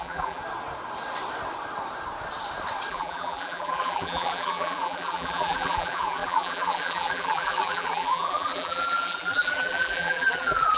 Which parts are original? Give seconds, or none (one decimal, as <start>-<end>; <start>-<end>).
0.4-2.9